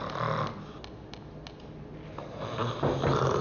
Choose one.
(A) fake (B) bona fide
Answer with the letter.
B